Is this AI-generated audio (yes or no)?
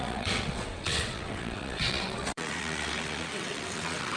yes